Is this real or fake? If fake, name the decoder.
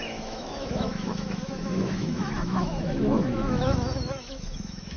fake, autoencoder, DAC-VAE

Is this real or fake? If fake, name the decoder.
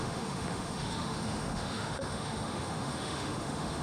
fake, autoencoder, DAC-VAE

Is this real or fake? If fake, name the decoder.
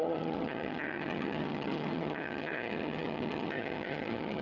fake, vocoder, HiFi-GAN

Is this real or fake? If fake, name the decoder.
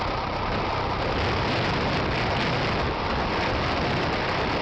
real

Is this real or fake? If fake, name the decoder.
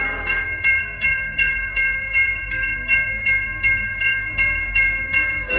fake, codec, SNAC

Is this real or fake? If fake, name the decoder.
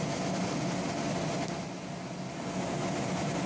real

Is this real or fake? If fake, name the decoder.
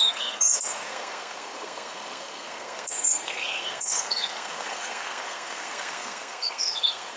fake, codec, SNAC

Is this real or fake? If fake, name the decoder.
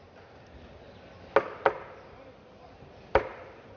real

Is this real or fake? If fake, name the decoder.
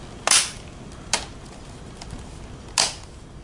real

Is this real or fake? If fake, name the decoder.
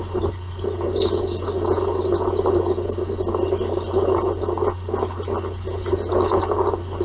real